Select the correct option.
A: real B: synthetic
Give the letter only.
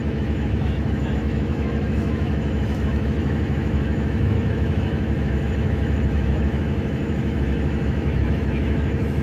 B